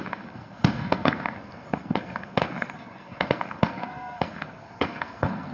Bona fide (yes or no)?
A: no